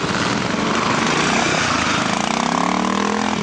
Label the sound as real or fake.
real